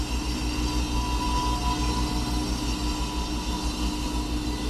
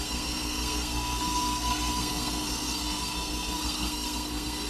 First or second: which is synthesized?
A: second